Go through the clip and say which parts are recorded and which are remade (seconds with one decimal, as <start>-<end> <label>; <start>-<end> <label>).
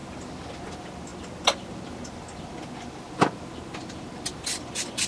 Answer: 0.0-5.1 recorded